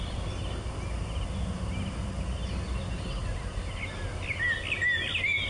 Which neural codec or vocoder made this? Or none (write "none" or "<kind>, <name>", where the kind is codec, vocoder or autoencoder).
none